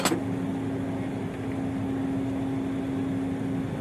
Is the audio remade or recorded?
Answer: recorded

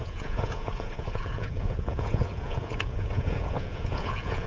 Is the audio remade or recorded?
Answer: remade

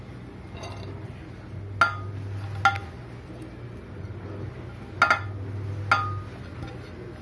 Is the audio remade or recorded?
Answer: recorded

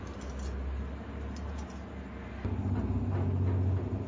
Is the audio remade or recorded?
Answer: recorded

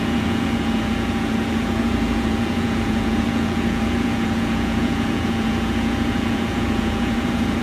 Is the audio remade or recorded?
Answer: remade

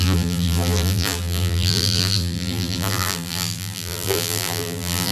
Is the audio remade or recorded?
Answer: remade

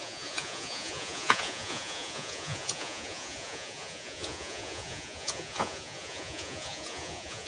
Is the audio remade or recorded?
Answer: remade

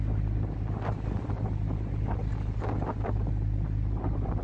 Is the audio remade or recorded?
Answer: recorded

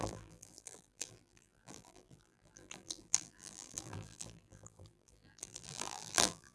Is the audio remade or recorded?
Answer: remade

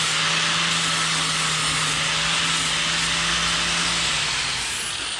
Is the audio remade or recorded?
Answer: recorded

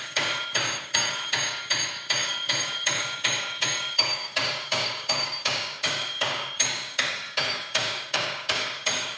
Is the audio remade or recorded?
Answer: remade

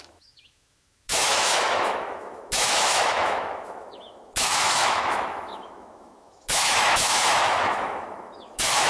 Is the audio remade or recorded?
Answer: remade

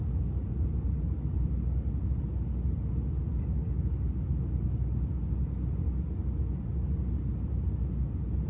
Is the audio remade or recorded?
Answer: recorded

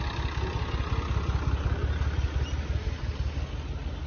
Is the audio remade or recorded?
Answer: recorded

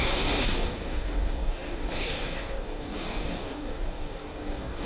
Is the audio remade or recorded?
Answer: remade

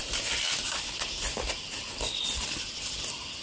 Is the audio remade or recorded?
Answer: recorded